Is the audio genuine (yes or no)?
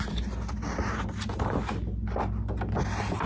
yes